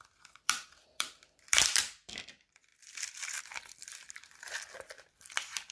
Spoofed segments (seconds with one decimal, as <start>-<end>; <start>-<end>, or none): 0.0-5.7